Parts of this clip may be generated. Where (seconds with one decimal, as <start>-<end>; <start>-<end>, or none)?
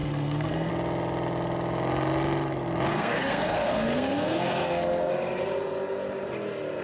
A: 0.0-0.7; 2.9-5.1